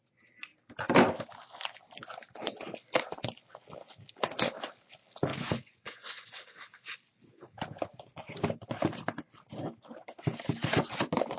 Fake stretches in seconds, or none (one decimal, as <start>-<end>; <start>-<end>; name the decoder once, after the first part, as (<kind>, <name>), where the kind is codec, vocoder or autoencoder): 5.3-6.3 (vocoder, Vocos)